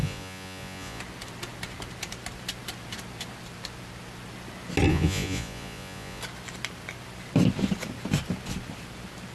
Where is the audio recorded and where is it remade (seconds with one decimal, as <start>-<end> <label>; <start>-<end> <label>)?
0.0-1.0 remade; 1.0-4.9 recorded; 4.9-6.2 remade; 6.2-9.3 recorded